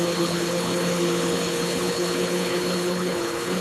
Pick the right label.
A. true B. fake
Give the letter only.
B